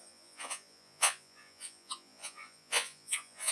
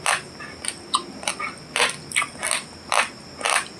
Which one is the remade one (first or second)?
first